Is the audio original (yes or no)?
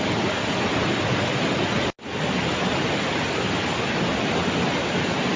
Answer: yes